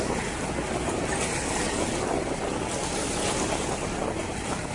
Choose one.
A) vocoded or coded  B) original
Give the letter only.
B